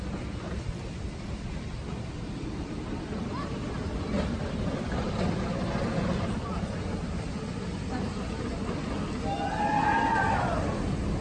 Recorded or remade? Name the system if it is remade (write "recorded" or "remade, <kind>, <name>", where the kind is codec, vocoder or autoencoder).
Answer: recorded